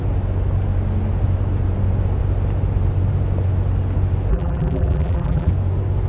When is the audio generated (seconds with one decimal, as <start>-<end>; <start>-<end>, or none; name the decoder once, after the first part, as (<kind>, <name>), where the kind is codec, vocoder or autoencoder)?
4.3-5.5 (vocoder, BigVGAN v2)